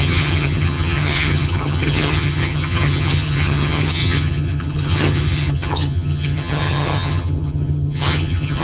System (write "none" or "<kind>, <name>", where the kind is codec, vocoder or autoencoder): vocoder, HiFi-GAN